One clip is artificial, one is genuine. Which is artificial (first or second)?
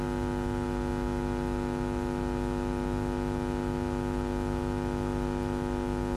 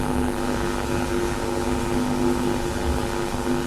second